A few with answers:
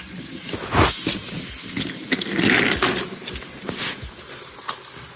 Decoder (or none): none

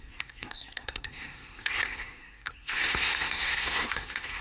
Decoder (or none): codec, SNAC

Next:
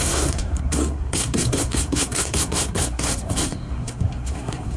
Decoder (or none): codec, SNAC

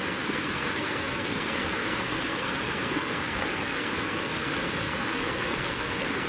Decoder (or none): codec, SNAC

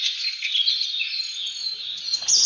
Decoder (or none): none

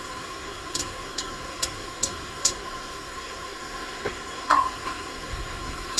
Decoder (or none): codec, SNAC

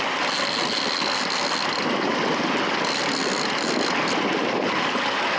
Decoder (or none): none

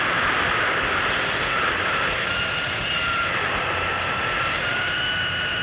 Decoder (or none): none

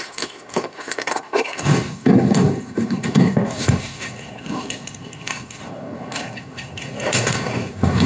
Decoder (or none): codec, SNAC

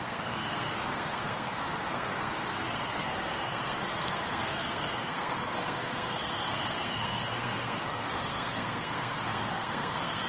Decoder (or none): codec, SNAC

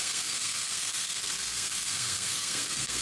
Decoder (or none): codec, SNAC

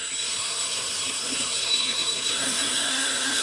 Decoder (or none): codec, SNAC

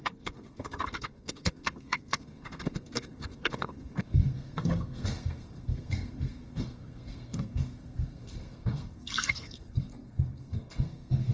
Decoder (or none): codec, SNAC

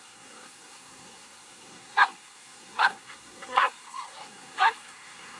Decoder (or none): codec, SNAC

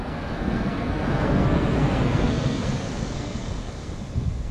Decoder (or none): codec, SNAC